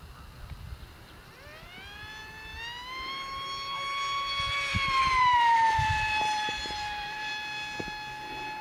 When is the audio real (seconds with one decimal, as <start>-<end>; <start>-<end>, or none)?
0.0-4.7; 7.3-8.6